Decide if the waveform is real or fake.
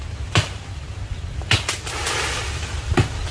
real